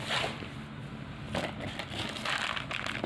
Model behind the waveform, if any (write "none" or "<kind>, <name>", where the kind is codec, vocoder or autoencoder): none